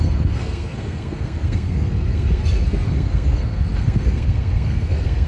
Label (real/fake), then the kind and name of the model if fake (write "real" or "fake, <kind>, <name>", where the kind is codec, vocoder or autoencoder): fake, codec, SNAC